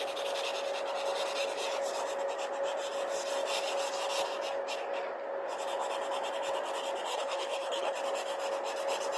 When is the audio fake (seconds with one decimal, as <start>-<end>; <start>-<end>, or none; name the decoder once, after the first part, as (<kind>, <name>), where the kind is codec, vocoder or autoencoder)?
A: 7.1-8.0 (codec, HILCodec)